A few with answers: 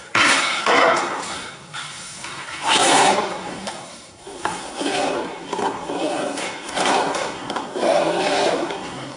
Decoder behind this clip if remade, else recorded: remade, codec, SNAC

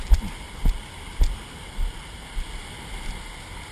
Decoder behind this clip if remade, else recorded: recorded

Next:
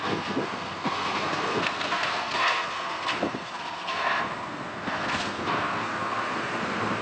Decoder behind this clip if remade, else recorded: remade, codec, SNAC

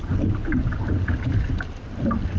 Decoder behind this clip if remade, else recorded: recorded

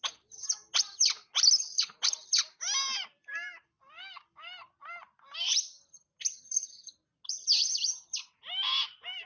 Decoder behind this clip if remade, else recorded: recorded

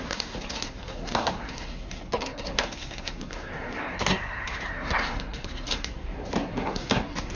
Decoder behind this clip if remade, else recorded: remade, codec, SNAC